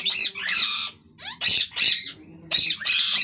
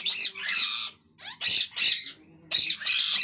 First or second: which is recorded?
second